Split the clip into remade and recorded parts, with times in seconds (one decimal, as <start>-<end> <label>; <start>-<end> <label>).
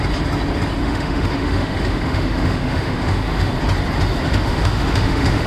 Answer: 0.0-0.8 recorded; 0.8-3.5 remade; 3.5-4.3 recorded; 4.3-5.5 remade